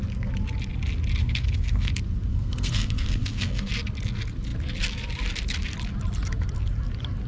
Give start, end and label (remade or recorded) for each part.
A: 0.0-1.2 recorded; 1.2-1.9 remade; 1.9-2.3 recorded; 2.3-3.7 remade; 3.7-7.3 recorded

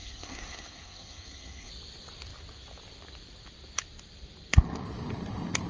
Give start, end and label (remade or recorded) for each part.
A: 0.0-1.7 remade; 1.7-5.7 recorded

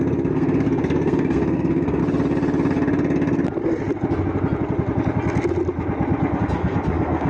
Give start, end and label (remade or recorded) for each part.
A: 0.0-2.0 remade; 2.0-6.4 recorded; 6.4-7.3 remade

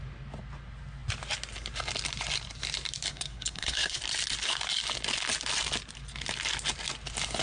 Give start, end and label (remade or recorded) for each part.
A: 0.0-3.1 recorded; 3.1-4.0 remade; 4.0-7.4 recorded